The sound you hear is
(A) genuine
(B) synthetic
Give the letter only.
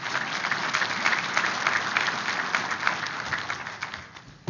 A